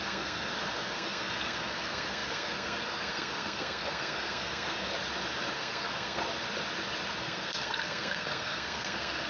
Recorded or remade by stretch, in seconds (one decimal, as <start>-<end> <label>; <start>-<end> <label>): 0.0-4.9 remade; 4.9-5.5 recorded; 5.5-6.2 remade; 6.2-7.2 recorded; 7.2-9.3 remade